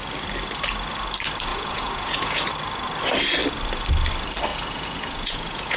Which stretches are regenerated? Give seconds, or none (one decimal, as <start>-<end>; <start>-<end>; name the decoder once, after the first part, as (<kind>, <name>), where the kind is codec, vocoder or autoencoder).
1.5-2.5 (vocoder, Vocos); 4.5-5.8